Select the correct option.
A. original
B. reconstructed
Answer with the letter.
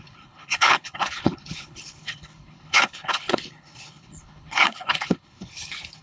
B